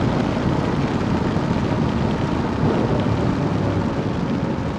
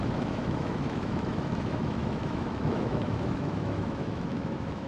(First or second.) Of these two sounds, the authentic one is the first